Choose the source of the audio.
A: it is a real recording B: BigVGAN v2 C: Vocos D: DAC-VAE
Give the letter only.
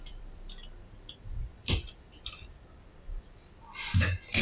B